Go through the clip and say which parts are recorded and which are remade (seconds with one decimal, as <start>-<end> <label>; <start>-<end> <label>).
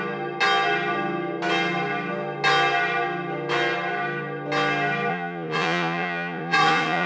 0.0-5.1 recorded; 5.1-7.1 remade